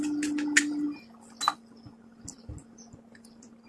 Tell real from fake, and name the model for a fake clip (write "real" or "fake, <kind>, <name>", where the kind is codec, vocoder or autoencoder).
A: real